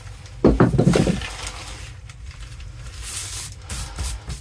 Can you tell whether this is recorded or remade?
remade